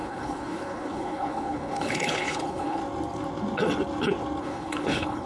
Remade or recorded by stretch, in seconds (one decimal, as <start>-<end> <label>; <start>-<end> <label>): 0.0-2.8 remade; 2.8-4.4 recorded; 4.4-5.3 remade